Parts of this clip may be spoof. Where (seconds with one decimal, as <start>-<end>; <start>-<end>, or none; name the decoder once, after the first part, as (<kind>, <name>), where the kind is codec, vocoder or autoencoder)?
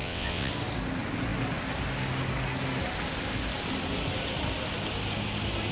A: 0.0-0.5 (vocoder, WaveNeXt)